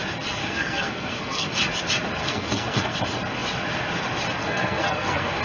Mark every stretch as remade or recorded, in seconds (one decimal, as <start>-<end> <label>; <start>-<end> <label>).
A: 0.0-0.4 recorded; 0.4-1.6 remade; 1.6-2.2 recorded; 2.2-3.0 remade; 3.0-4.4 recorded; 4.4-5.4 remade